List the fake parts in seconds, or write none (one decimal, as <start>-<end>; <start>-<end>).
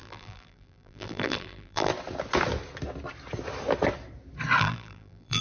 0.0-1.9; 4.6-5.4